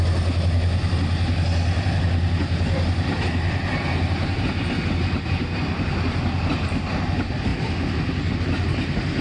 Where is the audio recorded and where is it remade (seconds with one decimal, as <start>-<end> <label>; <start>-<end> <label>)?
0.0-9.2 recorded